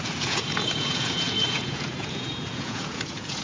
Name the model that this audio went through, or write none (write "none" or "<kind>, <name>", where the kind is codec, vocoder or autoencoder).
vocoder, Vocos